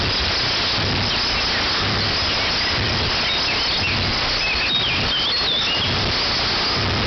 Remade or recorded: recorded